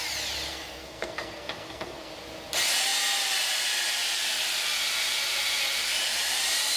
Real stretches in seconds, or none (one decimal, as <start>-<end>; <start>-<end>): 0.0-0.5; 2.1-6.8